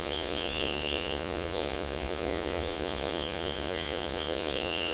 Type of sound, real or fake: fake